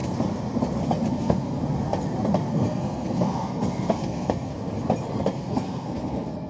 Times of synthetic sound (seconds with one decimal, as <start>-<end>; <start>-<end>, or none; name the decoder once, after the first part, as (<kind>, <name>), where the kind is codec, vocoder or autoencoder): 1.1-1.6 (codec, SNAC); 2.5-4.5; 5.2-6.5